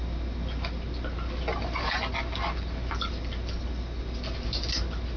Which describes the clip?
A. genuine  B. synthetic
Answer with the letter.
A